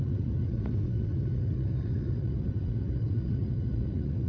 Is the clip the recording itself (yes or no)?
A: no